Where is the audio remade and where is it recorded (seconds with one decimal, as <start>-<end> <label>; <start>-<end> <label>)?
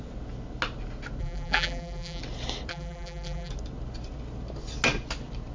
0.0-1.2 recorded; 1.2-2.2 remade; 2.2-2.7 recorded; 2.7-3.5 remade; 3.5-5.5 recorded